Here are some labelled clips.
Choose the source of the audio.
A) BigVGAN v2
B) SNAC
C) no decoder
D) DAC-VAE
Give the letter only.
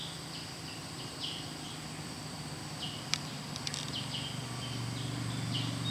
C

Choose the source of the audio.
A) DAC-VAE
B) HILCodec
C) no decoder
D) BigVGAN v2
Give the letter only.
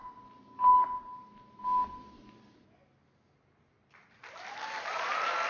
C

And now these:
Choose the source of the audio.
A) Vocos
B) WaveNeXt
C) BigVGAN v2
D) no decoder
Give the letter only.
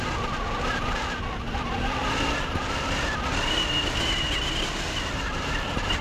D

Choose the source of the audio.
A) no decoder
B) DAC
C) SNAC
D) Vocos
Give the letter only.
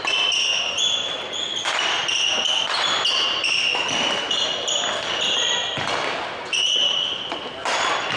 A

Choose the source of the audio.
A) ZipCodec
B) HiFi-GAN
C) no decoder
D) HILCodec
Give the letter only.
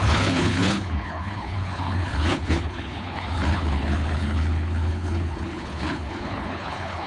D